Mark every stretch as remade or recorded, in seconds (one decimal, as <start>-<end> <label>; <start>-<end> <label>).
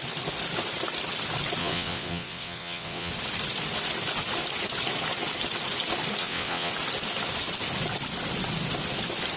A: 0.0-1.6 recorded; 1.6-3.1 remade; 3.1-6.2 recorded; 6.2-6.7 remade; 6.7-9.4 recorded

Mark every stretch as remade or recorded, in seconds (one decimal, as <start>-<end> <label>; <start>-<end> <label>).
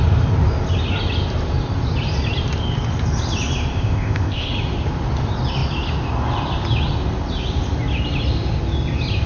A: 0.0-3.7 recorded; 3.7-4.5 remade; 4.5-9.3 recorded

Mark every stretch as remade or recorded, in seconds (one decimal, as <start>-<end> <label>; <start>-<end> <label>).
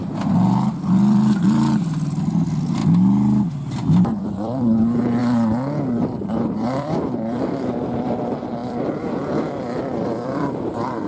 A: 0.0-2.8 remade; 2.8-3.5 recorded; 3.5-5.2 remade; 5.2-6.0 recorded; 6.0-11.1 remade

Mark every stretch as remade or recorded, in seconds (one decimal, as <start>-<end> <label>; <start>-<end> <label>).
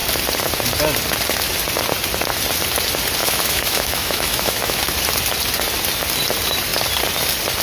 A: 0.0-3.2 recorded; 3.2-4.8 remade; 4.8-7.6 recorded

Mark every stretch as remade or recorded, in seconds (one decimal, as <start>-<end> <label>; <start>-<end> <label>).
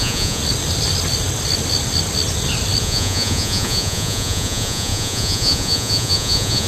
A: 0.0-0.4 remade; 0.4-2.8 recorded; 2.8-6.7 remade